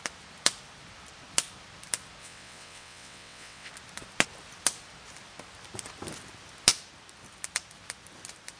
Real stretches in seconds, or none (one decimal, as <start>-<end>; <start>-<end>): 0.0-2.2; 3.7-8.6